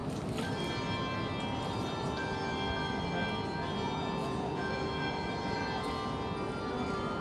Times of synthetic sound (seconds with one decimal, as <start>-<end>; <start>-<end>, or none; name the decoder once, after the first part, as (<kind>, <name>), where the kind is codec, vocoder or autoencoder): 4.2-5.9 (vocoder, Vocos)